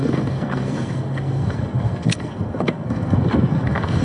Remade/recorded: remade